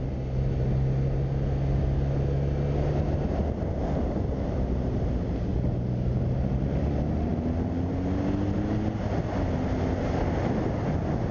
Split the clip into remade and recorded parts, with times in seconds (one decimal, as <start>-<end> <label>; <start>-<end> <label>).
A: 0.0-11.3 recorded